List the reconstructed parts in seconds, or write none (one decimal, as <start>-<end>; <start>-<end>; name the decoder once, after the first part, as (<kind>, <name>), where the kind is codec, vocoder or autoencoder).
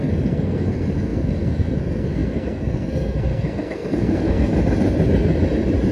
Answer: 0.0-4.5 (codec, SNAC)